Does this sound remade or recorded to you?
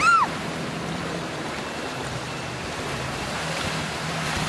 remade